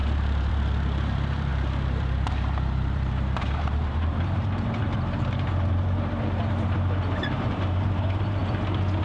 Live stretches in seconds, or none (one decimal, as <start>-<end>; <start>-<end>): 8.4-9.0